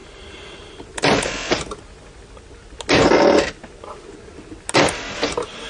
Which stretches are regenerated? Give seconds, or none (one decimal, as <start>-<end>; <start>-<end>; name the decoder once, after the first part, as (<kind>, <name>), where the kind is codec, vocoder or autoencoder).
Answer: none